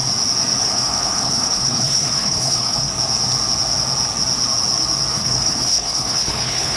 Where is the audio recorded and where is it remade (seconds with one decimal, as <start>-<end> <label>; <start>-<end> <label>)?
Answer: 0.0-0.6 recorded; 0.6-2.9 remade; 2.9-5.1 recorded; 5.1-6.8 remade